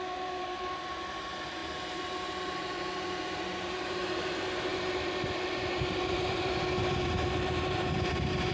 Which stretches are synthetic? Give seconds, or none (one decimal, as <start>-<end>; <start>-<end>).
0.0-8.5